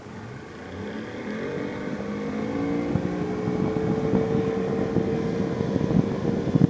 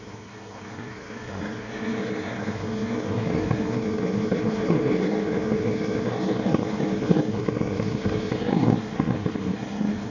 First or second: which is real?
first